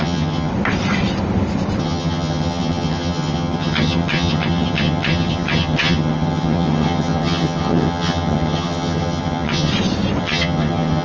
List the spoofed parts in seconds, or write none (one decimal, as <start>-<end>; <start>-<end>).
0.0-0.5; 1.8-9.7; 10.2-11.0